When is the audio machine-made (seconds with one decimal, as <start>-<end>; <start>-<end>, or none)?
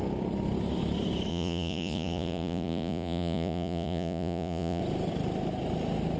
1.3-4.8